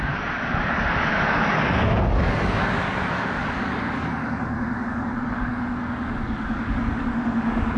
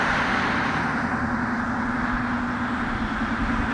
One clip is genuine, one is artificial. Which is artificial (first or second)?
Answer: first